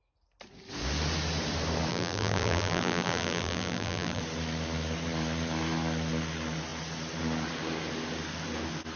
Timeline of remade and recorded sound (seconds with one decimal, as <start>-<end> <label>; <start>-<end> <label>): 0.0-1.9 recorded; 1.9-4.2 remade; 4.2-9.0 recorded